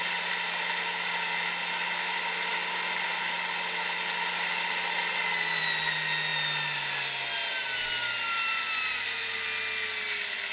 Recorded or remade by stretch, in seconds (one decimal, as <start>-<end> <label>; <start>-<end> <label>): 0.0-10.5 recorded